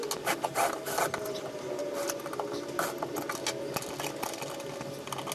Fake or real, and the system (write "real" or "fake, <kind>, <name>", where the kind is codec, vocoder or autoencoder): real